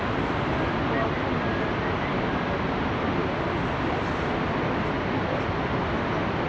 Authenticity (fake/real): real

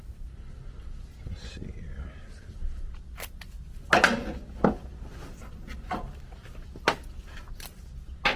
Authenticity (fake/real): real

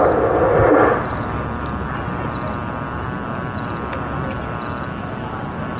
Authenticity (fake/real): real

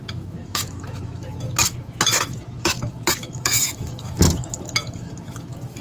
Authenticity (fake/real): fake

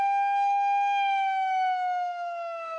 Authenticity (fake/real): fake